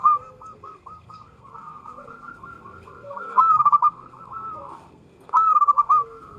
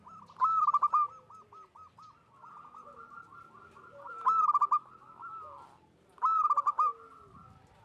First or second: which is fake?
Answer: first